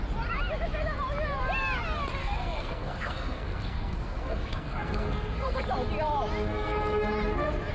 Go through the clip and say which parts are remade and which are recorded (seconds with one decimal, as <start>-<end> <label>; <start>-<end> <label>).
0.0-2.2 recorded; 2.2-5.6 remade; 5.6-6.5 recorded; 6.5-7.1 remade; 7.1-7.7 recorded